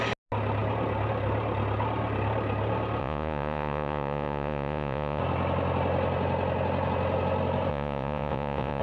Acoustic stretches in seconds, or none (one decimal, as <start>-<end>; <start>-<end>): 0.0-3.0; 5.2-7.7